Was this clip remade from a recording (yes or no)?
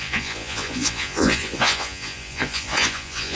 yes